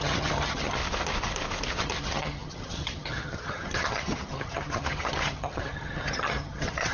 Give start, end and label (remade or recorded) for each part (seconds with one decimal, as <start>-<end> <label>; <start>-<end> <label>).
0.0-0.8 remade; 0.8-1.8 recorded; 1.8-6.9 remade